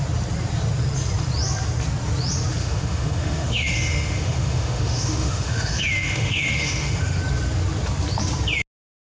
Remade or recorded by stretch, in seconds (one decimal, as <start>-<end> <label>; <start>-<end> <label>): 0.0-2.6 recorded; 2.6-7.2 remade; 7.2-9.1 recorded